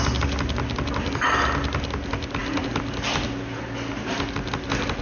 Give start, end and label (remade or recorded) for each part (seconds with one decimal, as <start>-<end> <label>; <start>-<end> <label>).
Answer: 0.0-5.0 recorded